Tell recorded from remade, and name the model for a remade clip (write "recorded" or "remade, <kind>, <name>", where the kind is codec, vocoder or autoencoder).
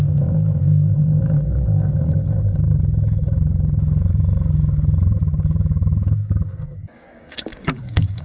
remade, codec, DAC